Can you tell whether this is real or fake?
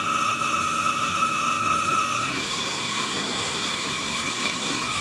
fake